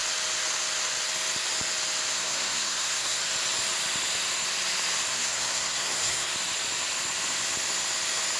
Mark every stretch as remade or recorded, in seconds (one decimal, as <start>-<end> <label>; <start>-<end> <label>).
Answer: 0.0-2.1 recorded; 2.1-3.2 remade; 3.2-5.1 recorded; 5.1-6.3 remade; 6.3-8.4 recorded